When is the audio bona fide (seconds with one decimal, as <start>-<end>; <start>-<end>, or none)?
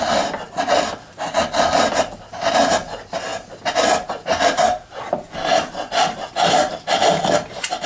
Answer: 0.0-7.9